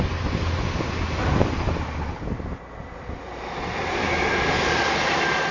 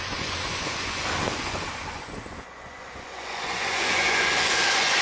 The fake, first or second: second